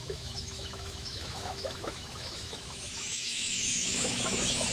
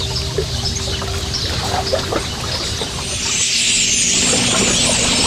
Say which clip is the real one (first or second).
second